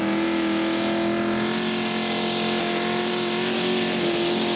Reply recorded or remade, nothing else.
recorded